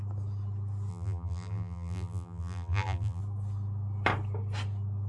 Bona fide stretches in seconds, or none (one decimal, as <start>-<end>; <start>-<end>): 0.0-0.9; 3.2-5.1

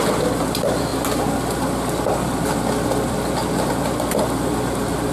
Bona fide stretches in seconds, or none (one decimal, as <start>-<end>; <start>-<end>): 0.0-5.1

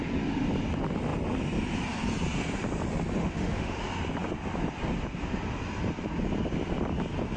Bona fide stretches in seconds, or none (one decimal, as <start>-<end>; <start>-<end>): 0.0-3.2; 3.8-7.4

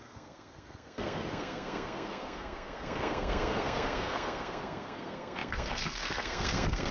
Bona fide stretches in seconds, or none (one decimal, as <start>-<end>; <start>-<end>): none

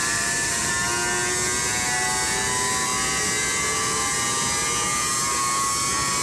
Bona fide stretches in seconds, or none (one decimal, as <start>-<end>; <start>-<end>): 0.7-6.2

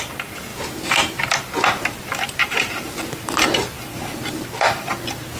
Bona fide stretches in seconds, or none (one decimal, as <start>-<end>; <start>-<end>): 0.0-2.4; 4.3-5.4

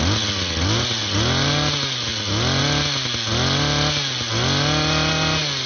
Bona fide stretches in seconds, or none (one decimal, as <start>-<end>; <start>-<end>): 0.0-5.7